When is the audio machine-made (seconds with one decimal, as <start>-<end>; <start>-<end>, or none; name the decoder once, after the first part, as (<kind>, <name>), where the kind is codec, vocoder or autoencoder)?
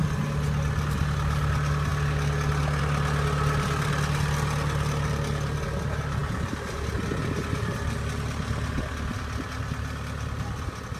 none